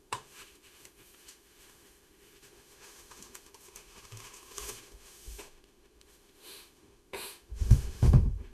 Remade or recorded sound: remade